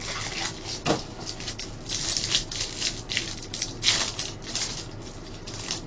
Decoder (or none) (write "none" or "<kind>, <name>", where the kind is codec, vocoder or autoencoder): none